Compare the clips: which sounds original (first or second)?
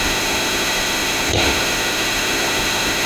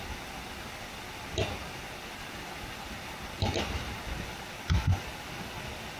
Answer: second